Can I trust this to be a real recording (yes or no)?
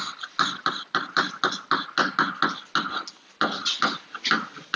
yes